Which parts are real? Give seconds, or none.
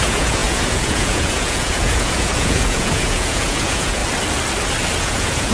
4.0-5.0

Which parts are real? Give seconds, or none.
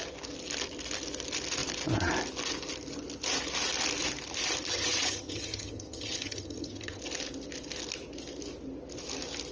0.0-4.7; 7.0-9.5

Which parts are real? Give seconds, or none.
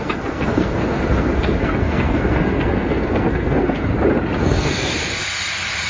3.9-4.4; 5.0-5.9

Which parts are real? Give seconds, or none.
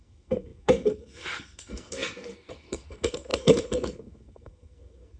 none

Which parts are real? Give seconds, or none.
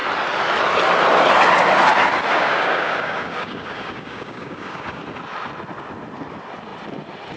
0.0-2.3; 5.0-7.4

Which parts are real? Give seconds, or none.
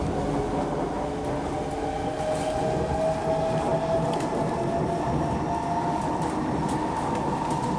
0.0-7.8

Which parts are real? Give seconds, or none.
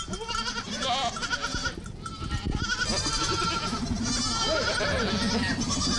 0.0-6.0